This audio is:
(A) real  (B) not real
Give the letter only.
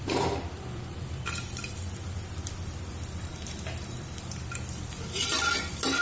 B